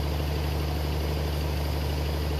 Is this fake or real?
real